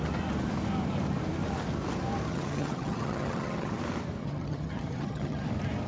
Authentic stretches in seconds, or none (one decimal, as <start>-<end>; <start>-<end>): 0.0-2.3; 3.8-4.2; 5.5-5.9

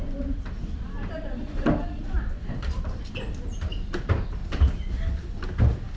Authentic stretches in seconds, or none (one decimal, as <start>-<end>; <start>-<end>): 4.4-6.0